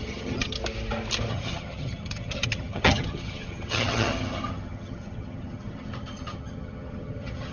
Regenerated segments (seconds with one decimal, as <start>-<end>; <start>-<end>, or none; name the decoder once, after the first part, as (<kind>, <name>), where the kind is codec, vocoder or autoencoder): 0.0-0.6 (vocoder, HiFi-GAN); 1.3-7.5